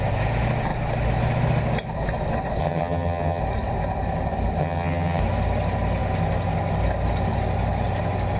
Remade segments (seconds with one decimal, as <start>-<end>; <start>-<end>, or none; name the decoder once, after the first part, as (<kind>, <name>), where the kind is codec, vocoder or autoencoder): 2.6-3.4 (vocoder, HiFi-GAN); 4.6-5.2